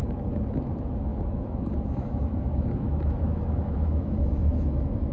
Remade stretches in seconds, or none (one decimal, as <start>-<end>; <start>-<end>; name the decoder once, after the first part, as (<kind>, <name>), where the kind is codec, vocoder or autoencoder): 0.0-5.1 (autoencoder, DAC-VAE)